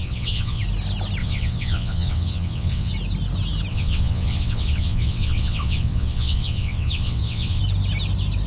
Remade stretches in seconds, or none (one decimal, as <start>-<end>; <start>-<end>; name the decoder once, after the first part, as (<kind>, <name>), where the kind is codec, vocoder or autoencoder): 0.0-0.6 (vocoder, WaveNeXt); 1.2-2.9; 3.7-7.6